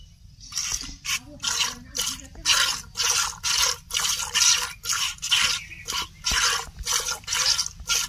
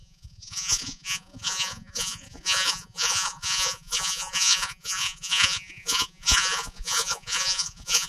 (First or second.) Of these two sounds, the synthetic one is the second